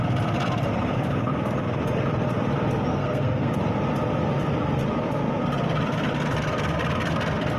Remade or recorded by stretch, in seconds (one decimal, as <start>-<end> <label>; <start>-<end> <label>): 0.0-2.9 recorded; 2.9-3.5 remade; 3.5-7.6 recorded

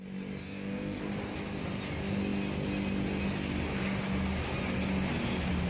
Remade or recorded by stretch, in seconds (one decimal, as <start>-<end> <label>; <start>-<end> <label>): 0.0-0.4 recorded; 0.4-1.0 remade; 1.0-5.7 recorded

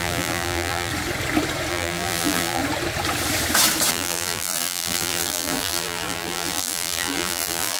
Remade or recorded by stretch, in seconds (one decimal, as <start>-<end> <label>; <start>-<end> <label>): 0.0-0.9 remade; 0.9-1.7 recorded; 1.7-2.6 remade; 2.6-3.9 recorded; 3.9-7.8 remade